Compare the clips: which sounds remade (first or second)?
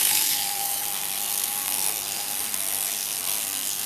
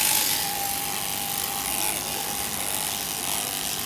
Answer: first